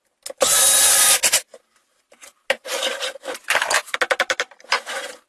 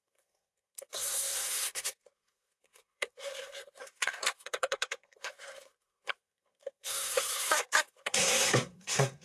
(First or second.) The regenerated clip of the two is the second